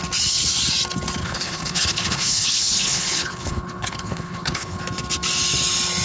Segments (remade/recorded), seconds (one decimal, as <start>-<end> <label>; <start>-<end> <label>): 0.0-1.2 recorded; 1.2-4.8 remade; 4.8-6.0 recorded